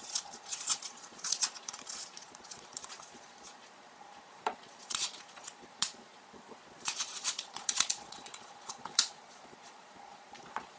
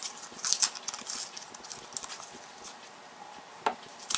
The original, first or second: second